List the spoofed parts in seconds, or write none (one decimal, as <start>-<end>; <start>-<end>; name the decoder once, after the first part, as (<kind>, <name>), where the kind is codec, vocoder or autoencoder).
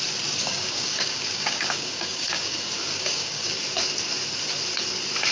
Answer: 0.4-3.6 (codec, DAC)